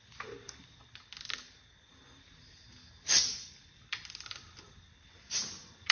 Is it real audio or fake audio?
real